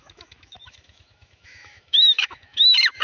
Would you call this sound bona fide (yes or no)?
no